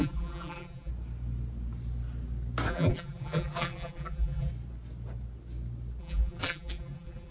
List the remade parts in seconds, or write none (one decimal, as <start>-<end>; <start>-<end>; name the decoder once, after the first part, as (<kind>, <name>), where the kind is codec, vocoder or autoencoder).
0.0-0.9 (vocoder, BigVGAN v2); 2.7-4.5; 6.0-7.3